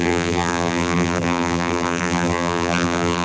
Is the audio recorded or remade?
remade